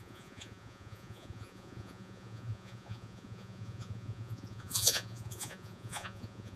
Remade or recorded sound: remade